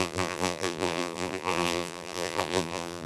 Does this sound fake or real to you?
fake